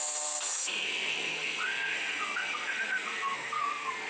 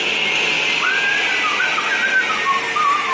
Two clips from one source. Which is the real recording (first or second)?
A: second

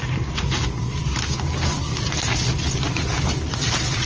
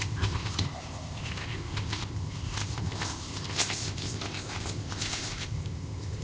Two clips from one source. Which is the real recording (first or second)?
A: first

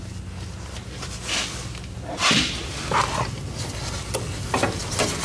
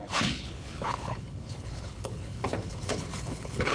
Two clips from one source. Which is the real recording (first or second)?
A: first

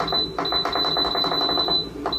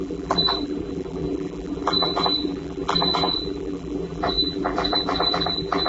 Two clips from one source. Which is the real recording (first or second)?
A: first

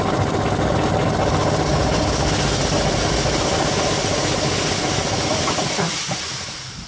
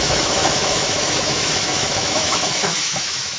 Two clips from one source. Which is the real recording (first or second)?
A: first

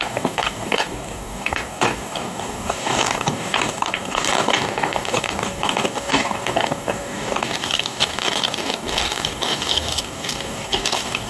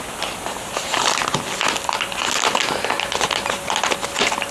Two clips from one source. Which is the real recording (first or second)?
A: second